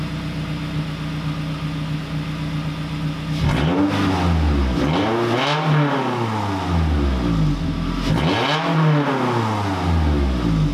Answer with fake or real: real